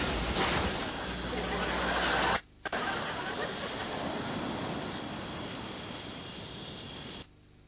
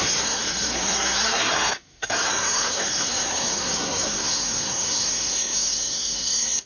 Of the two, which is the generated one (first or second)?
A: second